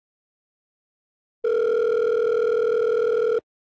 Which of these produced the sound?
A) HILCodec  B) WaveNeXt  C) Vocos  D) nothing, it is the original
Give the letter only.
D